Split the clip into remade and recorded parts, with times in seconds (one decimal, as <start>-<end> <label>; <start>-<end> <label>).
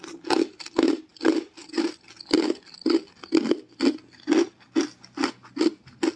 0.0-6.2 recorded